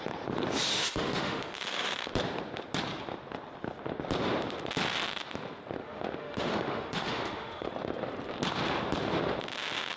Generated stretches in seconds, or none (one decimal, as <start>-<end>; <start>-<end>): 0.7-2.1; 5.8-7.7